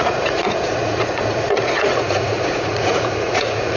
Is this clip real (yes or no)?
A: no